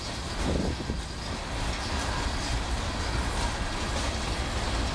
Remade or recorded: recorded